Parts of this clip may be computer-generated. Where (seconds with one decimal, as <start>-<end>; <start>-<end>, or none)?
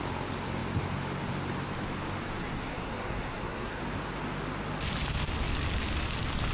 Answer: 2.4-3.8